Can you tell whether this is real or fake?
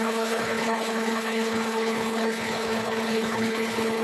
fake